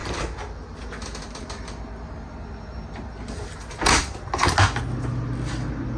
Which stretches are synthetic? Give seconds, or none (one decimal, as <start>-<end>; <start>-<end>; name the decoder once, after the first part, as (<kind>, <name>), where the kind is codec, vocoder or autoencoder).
none